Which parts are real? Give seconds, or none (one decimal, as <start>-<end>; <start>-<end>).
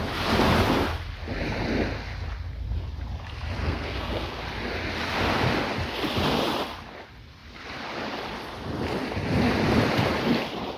0.0-3.6; 4.4-10.8